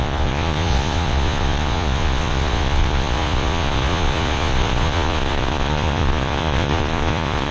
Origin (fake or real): fake